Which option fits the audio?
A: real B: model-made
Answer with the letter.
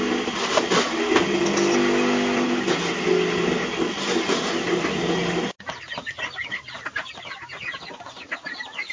A